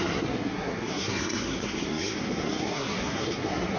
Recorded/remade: remade